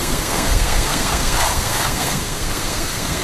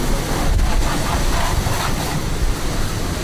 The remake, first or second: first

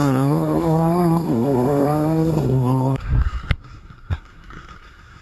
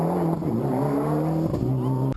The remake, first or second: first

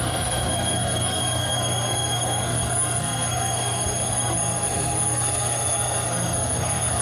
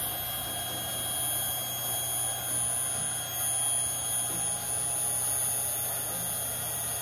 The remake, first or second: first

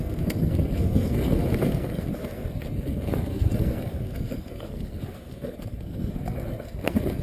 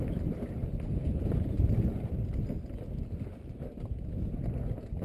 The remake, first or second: first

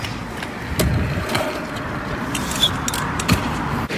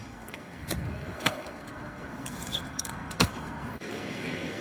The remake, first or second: second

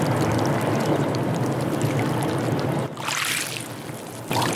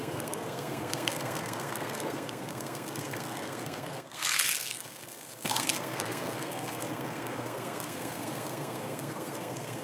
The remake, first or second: second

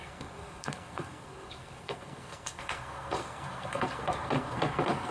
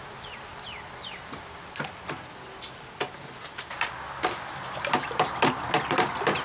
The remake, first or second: first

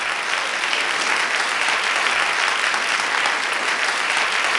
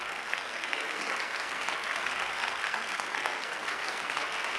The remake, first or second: second